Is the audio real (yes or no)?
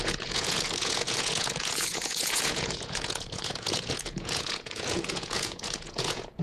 no